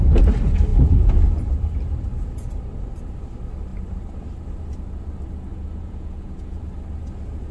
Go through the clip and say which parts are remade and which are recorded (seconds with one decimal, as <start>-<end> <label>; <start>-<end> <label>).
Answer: 0.0-0.7 recorded; 0.7-1.3 remade; 1.3-5.5 recorded; 5.5-6.6 remade; 6.6-7.5 recorded